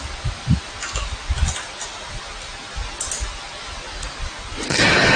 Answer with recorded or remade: recorded